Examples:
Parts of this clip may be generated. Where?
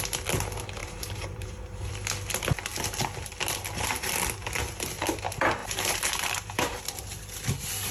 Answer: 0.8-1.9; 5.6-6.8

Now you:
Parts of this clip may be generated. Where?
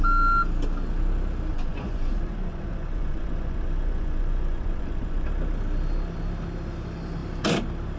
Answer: 1.5-5.3